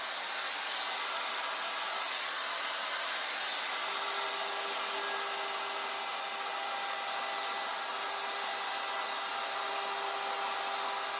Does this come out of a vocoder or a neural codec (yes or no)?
no